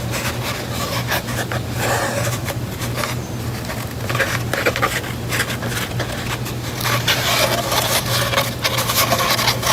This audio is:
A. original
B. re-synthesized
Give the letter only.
A